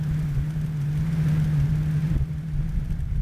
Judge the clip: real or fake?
real